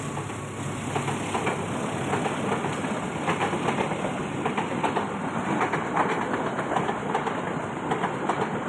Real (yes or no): yes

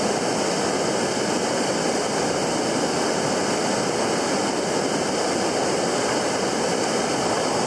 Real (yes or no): yes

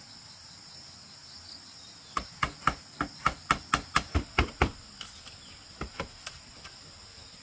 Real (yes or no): yes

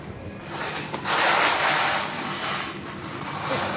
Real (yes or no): no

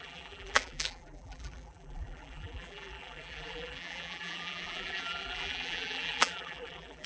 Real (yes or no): no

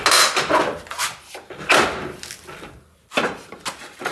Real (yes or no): yes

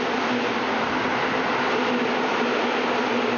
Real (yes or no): yes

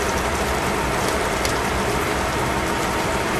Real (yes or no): no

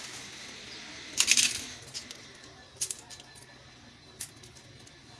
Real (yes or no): yes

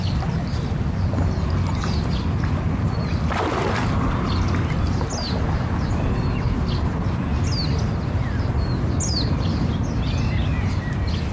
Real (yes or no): yes